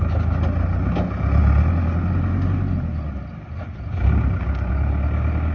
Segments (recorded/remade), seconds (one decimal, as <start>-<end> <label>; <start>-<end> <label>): 0.0-5.5 recorded